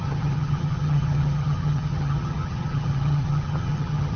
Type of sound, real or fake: fake